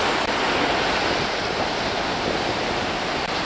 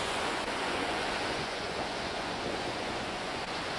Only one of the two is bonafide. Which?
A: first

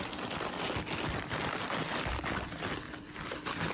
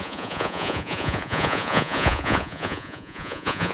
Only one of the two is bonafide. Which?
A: first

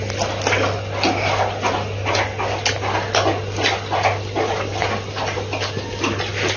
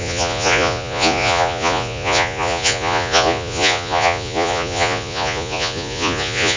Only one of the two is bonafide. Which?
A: first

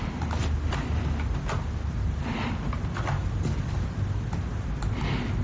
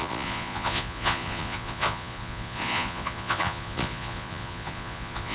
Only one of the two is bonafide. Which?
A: first